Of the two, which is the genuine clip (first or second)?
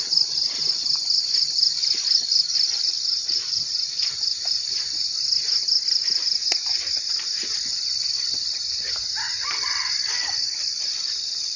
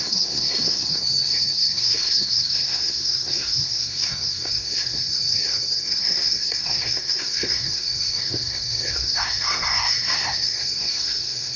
first